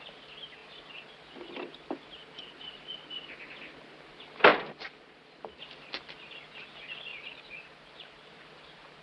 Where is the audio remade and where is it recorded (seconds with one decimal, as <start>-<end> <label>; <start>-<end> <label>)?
0.0-9.0 recorded